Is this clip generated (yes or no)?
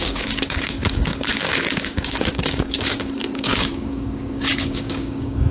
yes